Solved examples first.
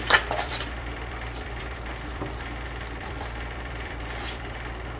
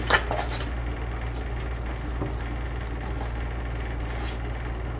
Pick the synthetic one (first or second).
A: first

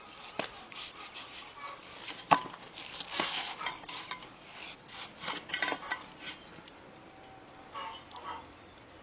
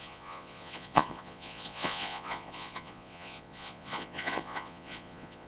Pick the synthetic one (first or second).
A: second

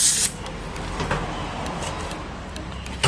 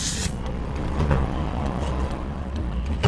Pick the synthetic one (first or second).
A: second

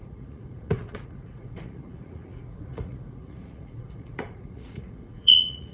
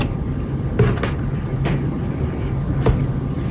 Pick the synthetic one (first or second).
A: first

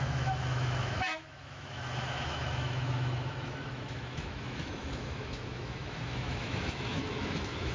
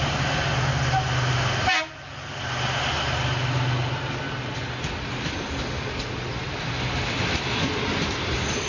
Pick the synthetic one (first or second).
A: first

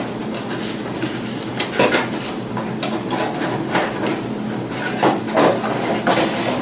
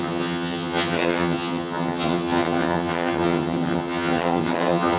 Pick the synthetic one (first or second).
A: second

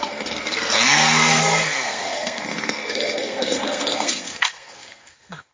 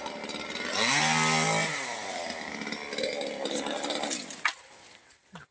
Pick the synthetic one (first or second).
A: first